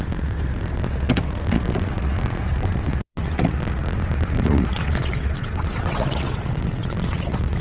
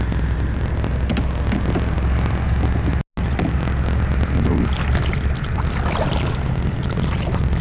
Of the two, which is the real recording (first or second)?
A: second